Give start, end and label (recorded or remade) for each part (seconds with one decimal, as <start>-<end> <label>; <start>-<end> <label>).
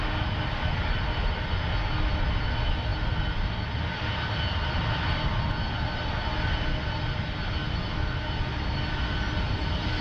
0.0-10.0 recorded